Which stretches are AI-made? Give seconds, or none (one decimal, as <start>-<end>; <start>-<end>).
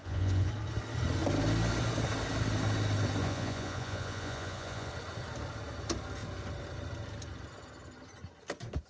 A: 0.0-0.5; 3.2-4.9